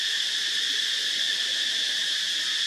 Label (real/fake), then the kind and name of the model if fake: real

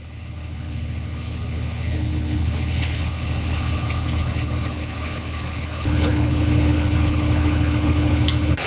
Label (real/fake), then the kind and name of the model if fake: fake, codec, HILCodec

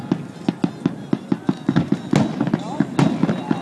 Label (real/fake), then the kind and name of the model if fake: real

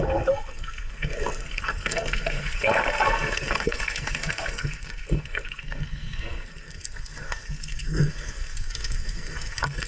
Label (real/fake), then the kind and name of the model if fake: fake, codec, SNAC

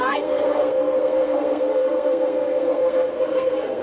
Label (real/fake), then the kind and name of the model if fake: fake, codec, SNAC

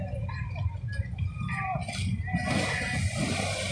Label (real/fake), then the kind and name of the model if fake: real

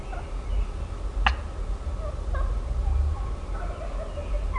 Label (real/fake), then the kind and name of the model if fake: real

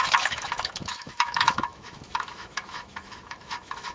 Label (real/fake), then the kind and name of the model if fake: fake, autoencoder, DAC-VAE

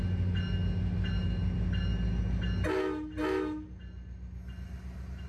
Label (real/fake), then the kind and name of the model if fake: real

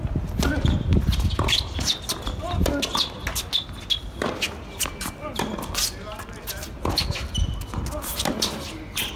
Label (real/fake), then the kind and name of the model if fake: real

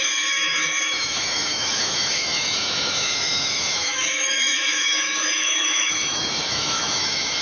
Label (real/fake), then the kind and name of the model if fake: fake, autoencoder, DAC-VAE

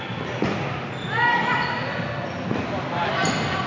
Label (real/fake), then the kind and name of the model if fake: real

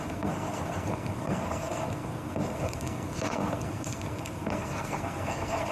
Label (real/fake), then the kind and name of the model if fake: fake, codec, SNAC